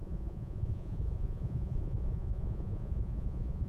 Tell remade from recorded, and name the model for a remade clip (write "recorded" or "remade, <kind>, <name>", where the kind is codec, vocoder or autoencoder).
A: remade, vocoder, Vocos